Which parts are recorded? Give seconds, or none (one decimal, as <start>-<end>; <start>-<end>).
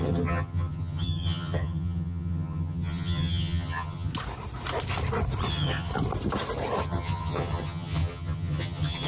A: 4.1-5.5; 5.9-6.8